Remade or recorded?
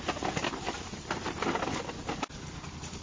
recorded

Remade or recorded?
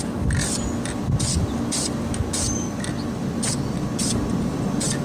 recorded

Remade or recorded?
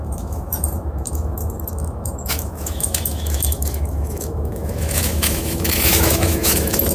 remade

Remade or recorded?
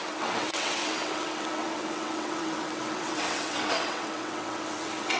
remade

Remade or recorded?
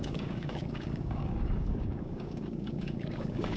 remade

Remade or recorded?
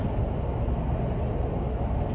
recorded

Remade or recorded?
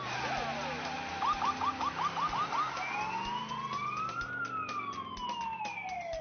recorded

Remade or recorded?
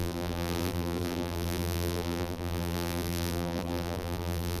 remade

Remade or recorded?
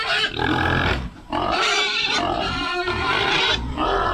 recorded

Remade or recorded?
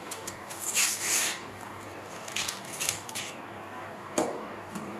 remade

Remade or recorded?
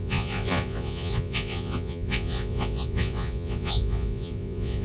remade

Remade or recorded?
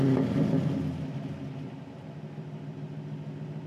recorded